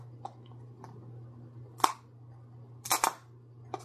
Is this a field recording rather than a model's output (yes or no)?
yes